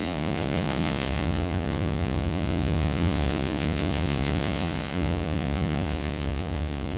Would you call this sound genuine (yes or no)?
no